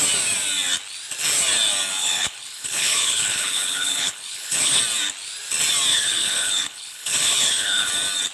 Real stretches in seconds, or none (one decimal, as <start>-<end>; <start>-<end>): 0.0-2.0; 4.8-5.9; 7.9-8.3